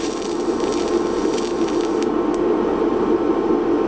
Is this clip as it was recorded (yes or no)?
yes